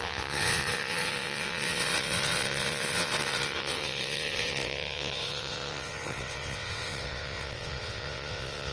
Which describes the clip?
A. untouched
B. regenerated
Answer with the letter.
B